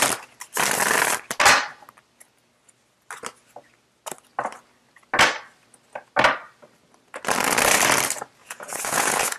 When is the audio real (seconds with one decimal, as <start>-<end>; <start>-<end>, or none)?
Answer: 0.0-8.4